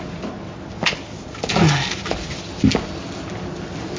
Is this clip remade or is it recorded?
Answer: recorded